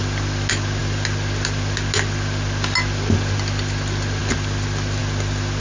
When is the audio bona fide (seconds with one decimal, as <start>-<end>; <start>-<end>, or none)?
0.0-5.6